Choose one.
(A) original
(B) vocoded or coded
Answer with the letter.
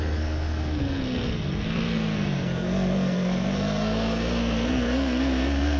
B